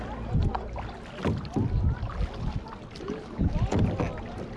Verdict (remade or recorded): recorded